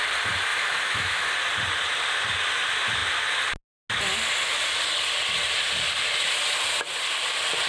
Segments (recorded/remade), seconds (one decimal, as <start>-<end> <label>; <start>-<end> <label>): 0.0-0.5 recorded; 0.5-1.3 remade; 1.3-7.7 recorded